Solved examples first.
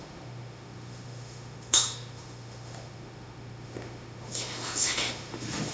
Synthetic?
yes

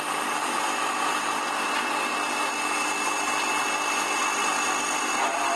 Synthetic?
no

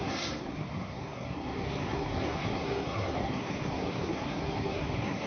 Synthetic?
yes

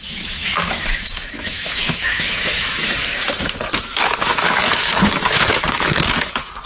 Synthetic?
yes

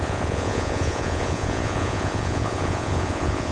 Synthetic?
yes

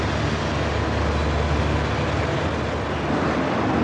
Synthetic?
no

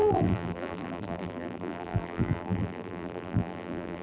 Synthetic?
yes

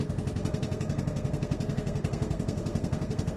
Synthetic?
yes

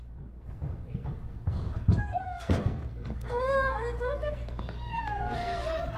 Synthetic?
yes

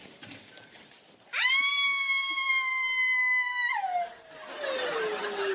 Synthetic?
no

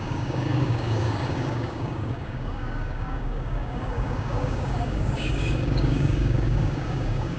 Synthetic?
yes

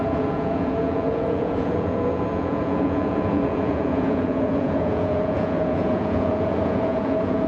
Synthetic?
yes